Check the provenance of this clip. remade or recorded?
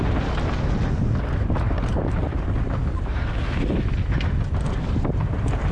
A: recorded